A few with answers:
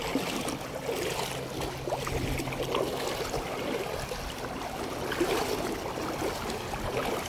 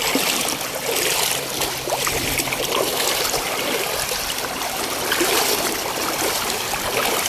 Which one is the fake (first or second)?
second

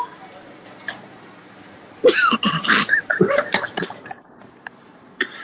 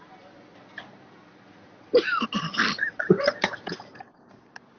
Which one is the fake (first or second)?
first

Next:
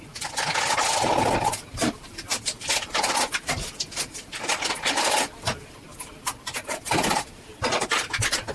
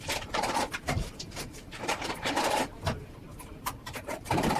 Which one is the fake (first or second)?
second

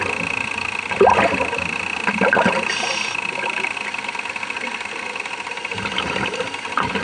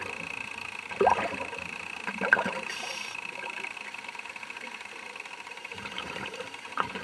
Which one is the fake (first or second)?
second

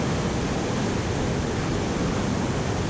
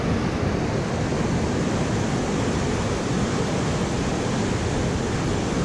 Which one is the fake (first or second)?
second